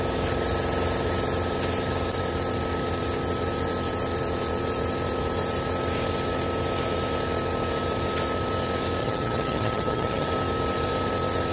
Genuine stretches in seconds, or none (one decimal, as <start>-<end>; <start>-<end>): 0.0-9.0; 10.3-11.5